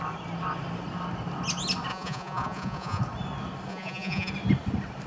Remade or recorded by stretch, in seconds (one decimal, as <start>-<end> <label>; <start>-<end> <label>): 0.0-1.9 recorded; 1.9-3.0 remade; 3.0-3.7 recorded; 3.7-4.3 remade; 4.3-5.1 recorded